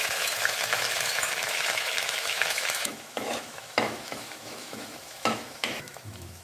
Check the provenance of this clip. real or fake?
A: fake